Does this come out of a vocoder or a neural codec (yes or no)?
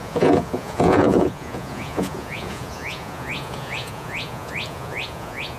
yes